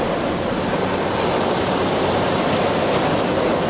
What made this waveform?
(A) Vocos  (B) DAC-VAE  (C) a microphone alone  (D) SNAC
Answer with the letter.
C